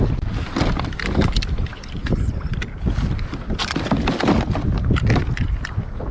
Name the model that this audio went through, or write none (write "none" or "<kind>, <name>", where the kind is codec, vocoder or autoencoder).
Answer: none